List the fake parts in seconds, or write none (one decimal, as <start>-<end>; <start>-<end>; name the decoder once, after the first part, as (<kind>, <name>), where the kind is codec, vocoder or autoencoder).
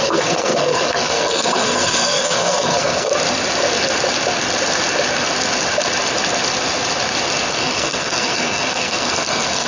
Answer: 0.0-3.1 (codec, SNAC); 7.5-9.7